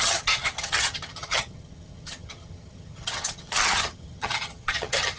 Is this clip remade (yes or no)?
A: yes